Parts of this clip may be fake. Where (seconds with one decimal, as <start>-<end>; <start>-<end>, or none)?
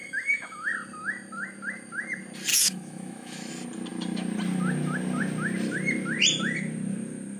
0.0-0.7; 2.5-3.5